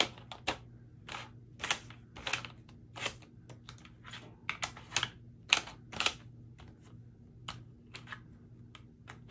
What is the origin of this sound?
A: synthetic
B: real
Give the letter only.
B